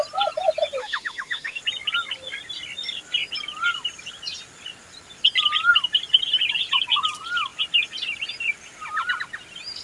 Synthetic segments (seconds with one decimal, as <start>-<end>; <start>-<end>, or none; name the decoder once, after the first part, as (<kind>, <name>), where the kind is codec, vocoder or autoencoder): 0.8-1.6 (autoencoder, DAC-VAE)